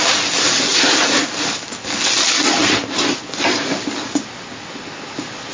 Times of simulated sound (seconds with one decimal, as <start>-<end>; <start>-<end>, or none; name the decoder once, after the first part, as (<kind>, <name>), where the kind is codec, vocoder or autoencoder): 0.7-1.3 (vocoder, Vocos)